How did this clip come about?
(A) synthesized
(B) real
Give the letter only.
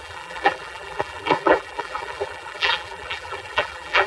A